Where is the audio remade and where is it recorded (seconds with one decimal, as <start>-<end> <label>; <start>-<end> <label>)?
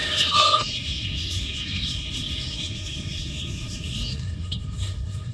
0.0-5.3 remade